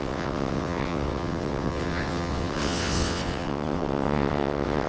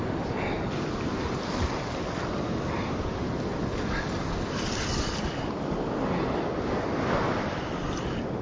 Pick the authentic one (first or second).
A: second